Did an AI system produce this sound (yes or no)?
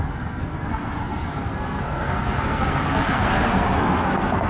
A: yes